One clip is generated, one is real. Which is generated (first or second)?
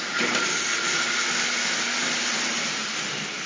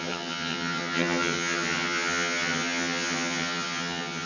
second